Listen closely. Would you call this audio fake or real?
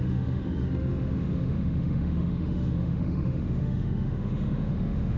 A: fake